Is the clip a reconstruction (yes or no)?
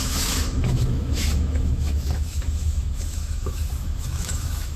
yes